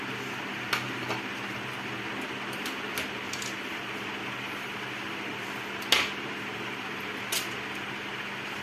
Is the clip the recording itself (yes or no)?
yes